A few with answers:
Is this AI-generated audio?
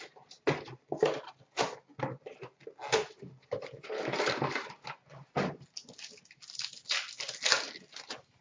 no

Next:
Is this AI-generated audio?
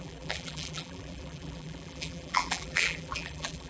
yes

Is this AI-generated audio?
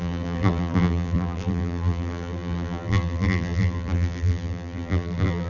yes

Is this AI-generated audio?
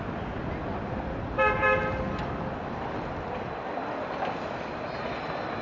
no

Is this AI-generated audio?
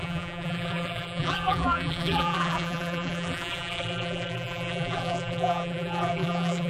yes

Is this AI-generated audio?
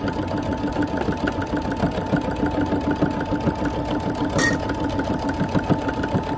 no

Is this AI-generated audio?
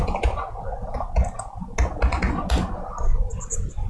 no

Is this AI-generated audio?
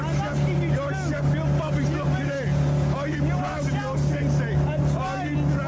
no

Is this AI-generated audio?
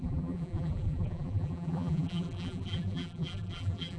yes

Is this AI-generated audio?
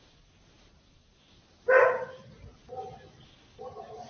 no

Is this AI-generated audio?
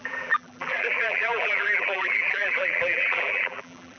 yes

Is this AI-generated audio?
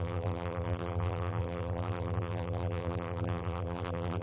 yes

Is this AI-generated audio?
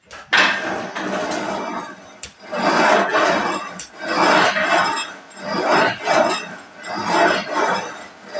no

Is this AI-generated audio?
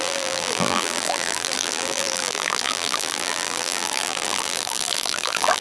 yes